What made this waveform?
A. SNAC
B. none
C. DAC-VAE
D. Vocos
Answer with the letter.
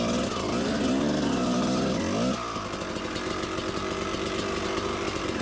B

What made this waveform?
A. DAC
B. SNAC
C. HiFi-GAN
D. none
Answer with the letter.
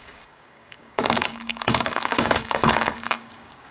A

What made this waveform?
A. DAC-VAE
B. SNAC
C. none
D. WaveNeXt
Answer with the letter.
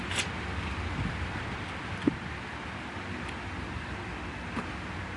C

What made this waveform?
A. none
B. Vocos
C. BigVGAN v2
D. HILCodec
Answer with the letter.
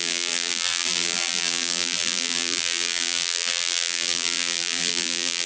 C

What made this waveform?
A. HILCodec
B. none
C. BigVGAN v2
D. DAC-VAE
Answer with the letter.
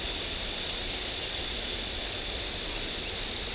B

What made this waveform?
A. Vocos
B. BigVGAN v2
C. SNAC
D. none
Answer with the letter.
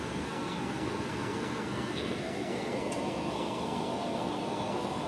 C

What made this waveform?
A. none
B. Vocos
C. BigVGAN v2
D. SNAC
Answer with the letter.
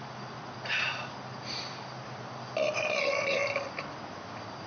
A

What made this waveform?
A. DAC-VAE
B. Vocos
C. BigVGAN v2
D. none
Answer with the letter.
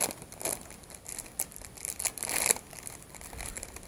D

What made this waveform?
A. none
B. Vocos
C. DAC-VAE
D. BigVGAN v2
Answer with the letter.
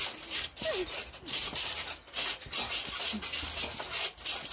A